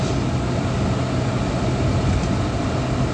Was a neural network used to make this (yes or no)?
no